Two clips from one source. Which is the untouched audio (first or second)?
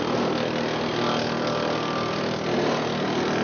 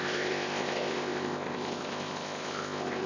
first